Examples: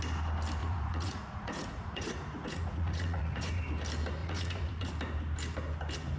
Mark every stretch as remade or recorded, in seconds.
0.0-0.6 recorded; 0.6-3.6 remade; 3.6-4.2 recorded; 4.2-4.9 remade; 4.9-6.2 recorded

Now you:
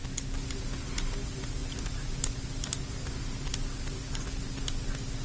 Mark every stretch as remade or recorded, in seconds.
0.0-0.5 remade; 0.5-5.2 recorded

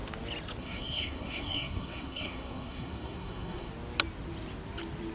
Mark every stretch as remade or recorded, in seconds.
0.0-0.6 recorded; 0.6-3.7 remade; 3.7-5.1 recorded

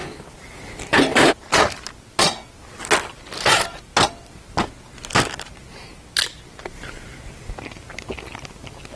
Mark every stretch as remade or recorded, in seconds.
0.0-9.0 recorded

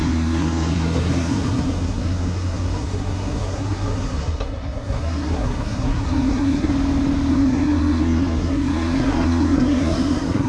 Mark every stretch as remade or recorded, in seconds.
0.0-6.7 remade; 6.7-7.3 recorded; 7.3-10.5 remade

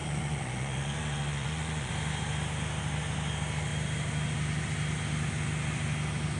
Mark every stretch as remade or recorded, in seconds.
0.0-1.9 remade; 1.9-6.4 recorded

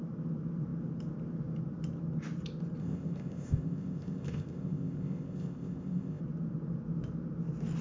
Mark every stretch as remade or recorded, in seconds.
0.0-2.8 recorded; 2.8-6.2 remade; 6.2-7.8 recorded